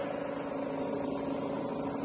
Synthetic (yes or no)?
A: no